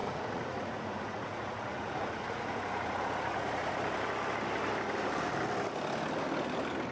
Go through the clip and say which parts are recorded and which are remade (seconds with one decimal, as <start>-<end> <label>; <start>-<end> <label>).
0.0-3.7 remade; 3.7-6.9 recorded